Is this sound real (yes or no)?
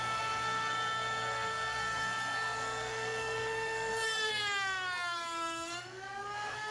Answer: no